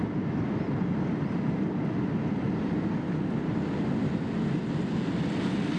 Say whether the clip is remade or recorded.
recorded